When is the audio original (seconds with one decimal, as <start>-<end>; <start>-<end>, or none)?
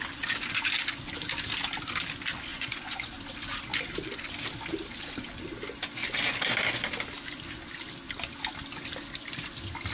0.0-2.5; 3.1-9.9